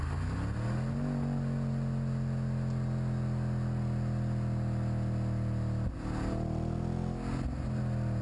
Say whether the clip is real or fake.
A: real